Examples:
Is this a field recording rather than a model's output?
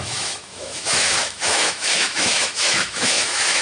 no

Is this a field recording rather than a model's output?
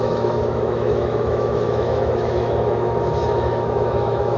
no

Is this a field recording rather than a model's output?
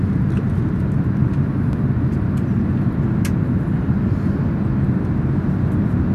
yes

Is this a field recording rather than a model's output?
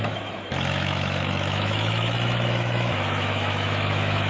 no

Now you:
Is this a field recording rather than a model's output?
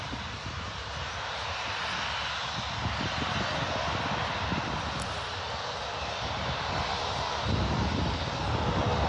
yes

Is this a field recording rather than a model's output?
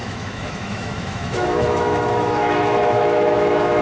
no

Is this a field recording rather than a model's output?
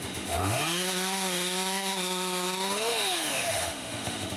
no